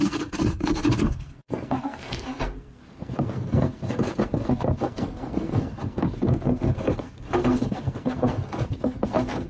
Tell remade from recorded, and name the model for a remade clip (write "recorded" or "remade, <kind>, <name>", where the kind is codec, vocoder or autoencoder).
remade, codec, SNAC